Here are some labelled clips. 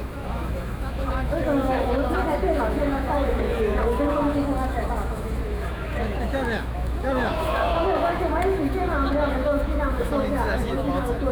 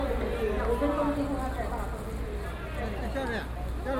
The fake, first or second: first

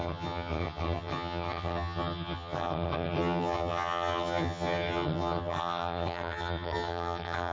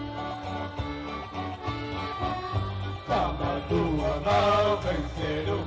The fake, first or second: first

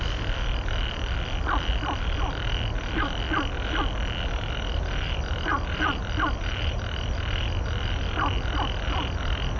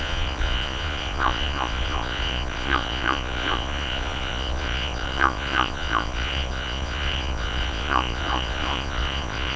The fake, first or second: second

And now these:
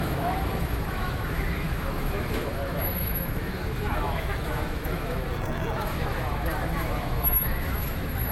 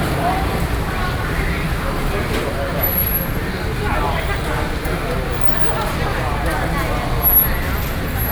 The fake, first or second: first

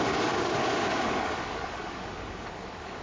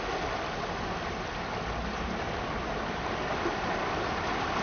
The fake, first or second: first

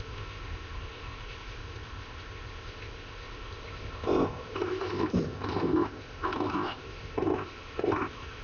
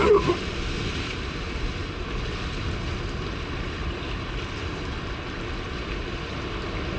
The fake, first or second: first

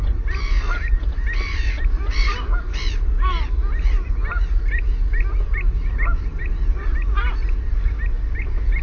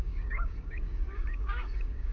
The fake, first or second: second